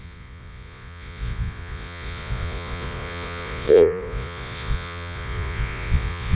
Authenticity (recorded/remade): remade